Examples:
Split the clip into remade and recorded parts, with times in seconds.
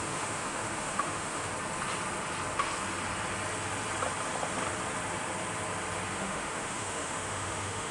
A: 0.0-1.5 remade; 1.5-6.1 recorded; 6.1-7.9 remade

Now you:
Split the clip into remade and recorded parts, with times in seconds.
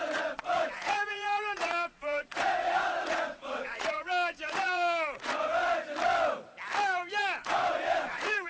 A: 0.0-5.5 remade; 5.5-7.2 recorded; 7.2-8.5 remade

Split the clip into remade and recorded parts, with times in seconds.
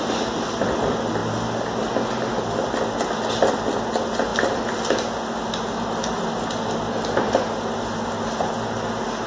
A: 0.0-9.3 recorded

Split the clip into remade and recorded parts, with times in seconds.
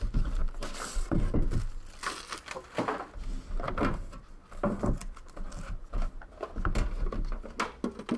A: 0.0-8.2 recorded